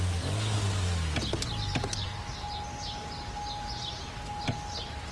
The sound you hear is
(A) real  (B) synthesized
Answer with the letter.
A